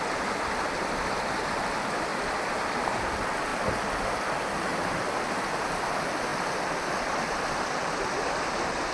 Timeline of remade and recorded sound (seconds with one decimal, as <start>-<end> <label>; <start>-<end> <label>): 0.0-4.7 recorded; 4.7-5.5 remade; 5.5-6.3 recorded; 6.3-8.9 remade